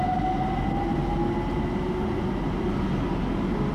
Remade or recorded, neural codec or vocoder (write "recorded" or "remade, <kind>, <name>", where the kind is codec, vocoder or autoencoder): recorded